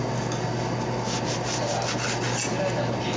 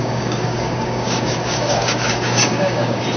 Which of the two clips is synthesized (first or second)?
second